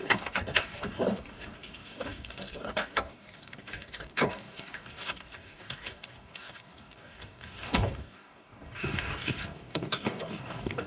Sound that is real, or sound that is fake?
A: fake